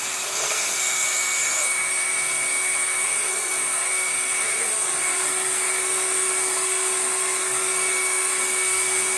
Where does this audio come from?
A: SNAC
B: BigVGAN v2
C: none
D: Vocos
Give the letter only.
A